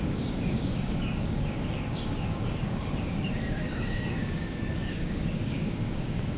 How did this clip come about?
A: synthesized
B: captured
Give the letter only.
A